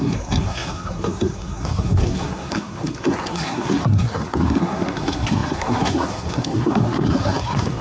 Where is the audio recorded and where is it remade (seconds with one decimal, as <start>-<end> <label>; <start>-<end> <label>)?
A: 0.0-7.8 remade